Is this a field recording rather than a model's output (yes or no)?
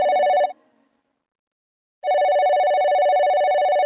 yes